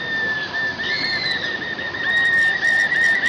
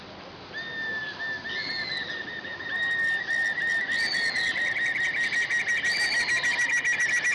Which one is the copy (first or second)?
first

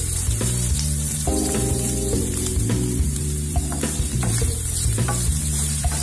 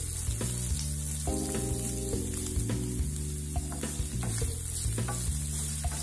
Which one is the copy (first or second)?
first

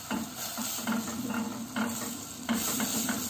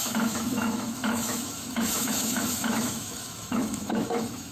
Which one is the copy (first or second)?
second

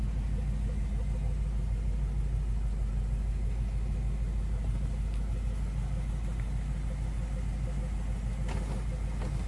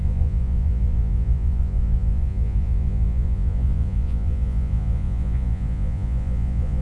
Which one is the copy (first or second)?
second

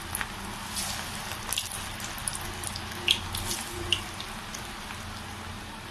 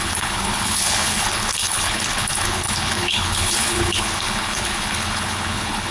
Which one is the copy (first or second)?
second